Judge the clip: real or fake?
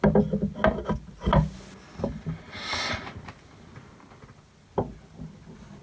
real